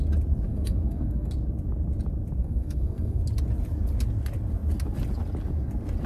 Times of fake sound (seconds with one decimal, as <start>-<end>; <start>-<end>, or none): 0.5-1.3; 2.4-3.2